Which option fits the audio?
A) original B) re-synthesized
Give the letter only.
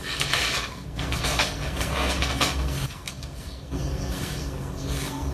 B